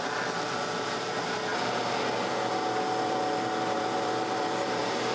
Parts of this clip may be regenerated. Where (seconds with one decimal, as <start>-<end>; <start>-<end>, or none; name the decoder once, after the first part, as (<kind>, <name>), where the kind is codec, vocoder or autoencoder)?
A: 0.0-1.5 (vocoder, BigVGAN v2); 3.0-5.1